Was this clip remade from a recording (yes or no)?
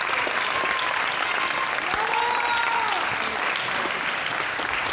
no